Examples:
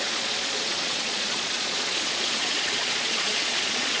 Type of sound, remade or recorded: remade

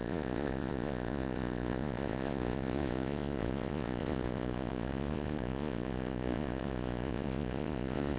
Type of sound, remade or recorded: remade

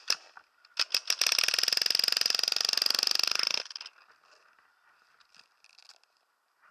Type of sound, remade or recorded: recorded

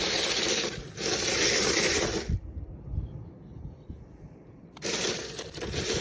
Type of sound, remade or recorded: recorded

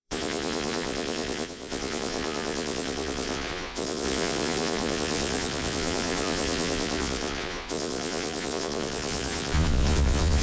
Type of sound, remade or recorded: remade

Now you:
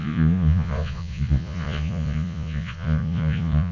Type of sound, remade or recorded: remade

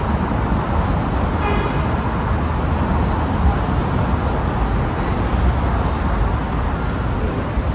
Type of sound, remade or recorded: recorded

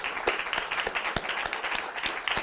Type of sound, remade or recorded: recorded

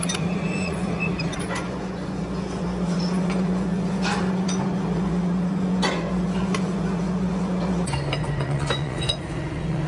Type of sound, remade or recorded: remade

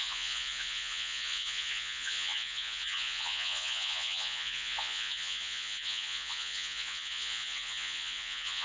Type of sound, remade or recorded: remade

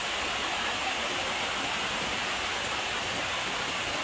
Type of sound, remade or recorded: recorded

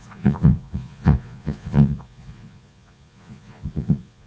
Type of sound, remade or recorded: remade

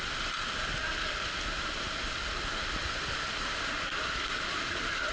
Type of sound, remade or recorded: recorded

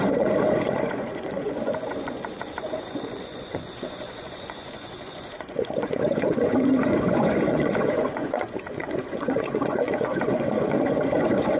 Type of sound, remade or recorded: remade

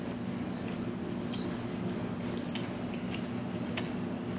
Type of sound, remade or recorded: recorded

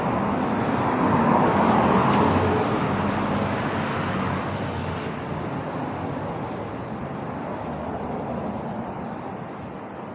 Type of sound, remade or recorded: recorded